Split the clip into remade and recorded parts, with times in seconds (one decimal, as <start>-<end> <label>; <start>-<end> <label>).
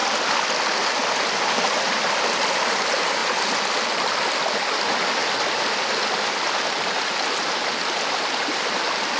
0.0-3.2 recorded; 3.2-4.5 remade; 4.5-5.2 recorded; 5.2-8.3 remade; 8.3-9.2 recorded